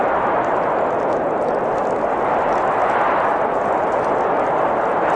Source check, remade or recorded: recorded